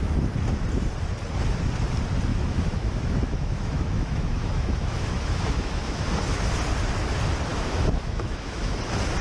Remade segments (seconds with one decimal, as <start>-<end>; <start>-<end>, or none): 2.3-6.0; 7.5-8.6